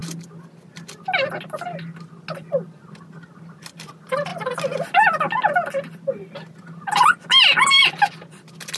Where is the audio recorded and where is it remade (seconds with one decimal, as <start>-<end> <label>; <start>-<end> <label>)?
0.0-8.8 recorded